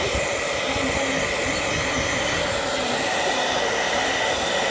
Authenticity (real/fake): real